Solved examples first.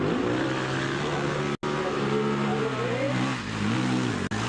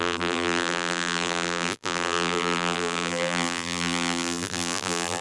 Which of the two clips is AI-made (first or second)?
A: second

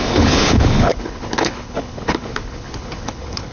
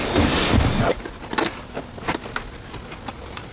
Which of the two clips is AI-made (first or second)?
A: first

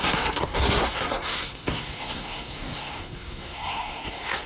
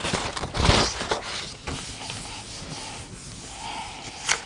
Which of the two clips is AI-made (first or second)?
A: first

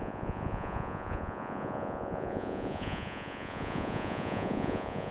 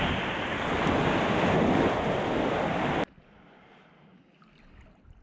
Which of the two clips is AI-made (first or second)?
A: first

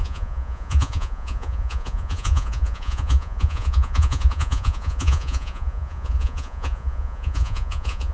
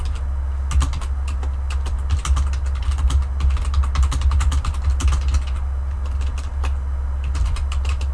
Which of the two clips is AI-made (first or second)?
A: first